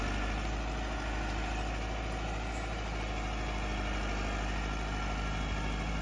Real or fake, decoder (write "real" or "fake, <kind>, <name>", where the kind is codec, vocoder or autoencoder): real